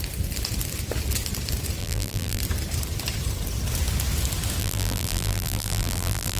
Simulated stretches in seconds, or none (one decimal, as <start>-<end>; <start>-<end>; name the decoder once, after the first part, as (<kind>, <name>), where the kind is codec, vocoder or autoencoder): 1.8-2.4 (vocoder, BigVGAN v2); 4.6-6.4